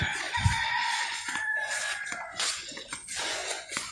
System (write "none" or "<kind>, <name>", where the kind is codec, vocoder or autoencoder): vocoder, Vocos